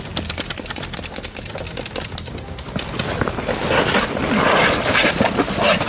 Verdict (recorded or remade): recorded